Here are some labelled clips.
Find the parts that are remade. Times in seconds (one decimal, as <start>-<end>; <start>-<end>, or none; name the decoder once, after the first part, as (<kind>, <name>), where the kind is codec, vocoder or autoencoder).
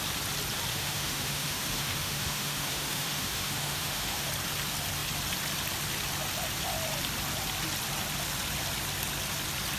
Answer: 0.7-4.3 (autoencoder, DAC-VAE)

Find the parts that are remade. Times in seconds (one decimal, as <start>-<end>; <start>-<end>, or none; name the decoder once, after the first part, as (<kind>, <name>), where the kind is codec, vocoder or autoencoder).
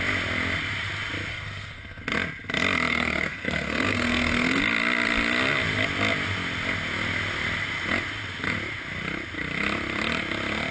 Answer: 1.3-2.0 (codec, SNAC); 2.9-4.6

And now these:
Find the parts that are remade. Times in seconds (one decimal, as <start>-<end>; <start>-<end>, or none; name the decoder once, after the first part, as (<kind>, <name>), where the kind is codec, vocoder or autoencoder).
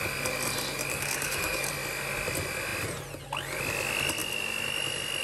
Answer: 0.9-1.7 (codec, SNAC)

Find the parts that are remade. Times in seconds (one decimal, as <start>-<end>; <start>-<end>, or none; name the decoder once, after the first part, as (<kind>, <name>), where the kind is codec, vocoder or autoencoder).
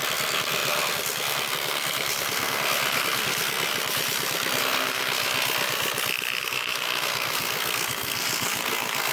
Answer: 0.0-3.7 (codec, SNAC); 4.6-5.2; 6.4-9.1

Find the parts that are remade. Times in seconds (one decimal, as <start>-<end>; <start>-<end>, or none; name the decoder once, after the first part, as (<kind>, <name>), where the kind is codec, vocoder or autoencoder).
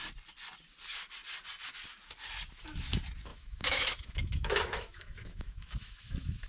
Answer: 3.3-6.5 (autoencoder, DAC-VAE)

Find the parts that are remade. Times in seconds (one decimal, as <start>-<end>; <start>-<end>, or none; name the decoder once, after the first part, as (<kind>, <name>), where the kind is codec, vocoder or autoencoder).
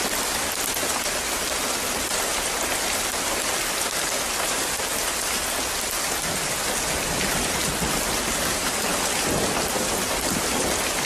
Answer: none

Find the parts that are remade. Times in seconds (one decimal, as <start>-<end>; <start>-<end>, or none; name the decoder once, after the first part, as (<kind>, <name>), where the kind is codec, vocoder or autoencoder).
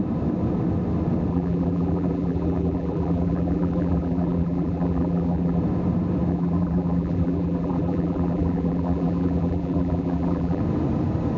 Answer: 1.3-5.6 (vocoder, BigVGAN v2); 6.3-10.6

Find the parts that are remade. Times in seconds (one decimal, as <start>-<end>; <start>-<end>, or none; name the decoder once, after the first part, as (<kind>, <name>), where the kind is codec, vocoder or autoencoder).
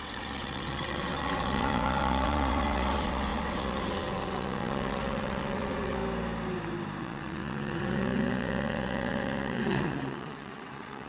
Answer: 0.0-6.0 (vocoder, WaveNeXt); 7.0-11.1